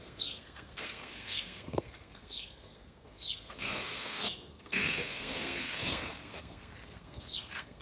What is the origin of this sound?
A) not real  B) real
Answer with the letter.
A